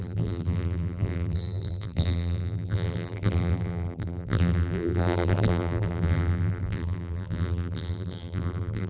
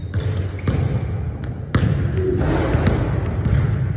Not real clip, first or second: first